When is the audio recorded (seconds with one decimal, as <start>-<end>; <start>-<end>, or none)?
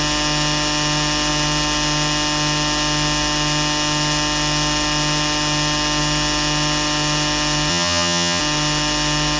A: 0.0-7.7; 8.4-9.4